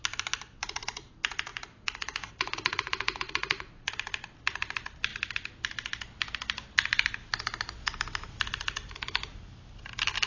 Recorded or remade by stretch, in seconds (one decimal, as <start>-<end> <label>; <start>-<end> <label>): 0.0-0.6 recorded; 0.6-1.1 remade; 1.1-1.5 recorded; 1.5-3.9 remade; 3.9-10.3 recorded